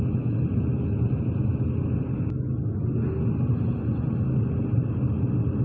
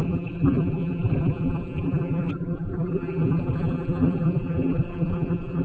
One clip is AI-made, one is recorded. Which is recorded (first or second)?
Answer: first